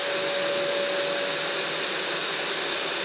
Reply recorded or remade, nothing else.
recorded